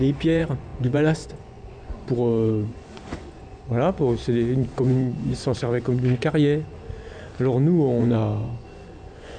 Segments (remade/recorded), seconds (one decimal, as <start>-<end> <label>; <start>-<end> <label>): 0.0-4.0 remade; 4.0-4.8 recorded; 4.8-6.7 remade; 6.7-8.0 recorded; 8.0-9.4 remade